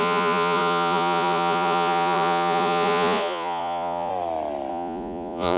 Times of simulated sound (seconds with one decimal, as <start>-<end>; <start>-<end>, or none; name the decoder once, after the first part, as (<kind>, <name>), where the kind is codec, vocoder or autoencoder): 0.0-4.1 (vocoder, Vocos); 4.7-5.6